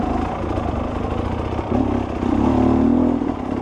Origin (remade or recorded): recorded